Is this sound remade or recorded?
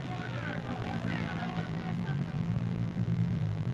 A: remade